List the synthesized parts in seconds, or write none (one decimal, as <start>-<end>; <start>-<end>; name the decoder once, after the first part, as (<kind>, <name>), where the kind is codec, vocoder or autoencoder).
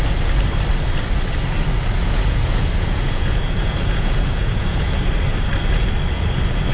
2.0-5.0 (vocoder, Vocos)